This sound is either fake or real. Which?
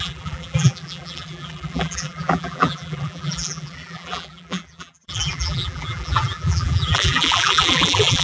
fake